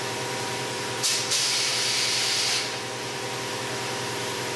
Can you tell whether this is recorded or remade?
remade